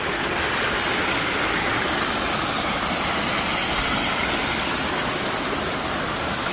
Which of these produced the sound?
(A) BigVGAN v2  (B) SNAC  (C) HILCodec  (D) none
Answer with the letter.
D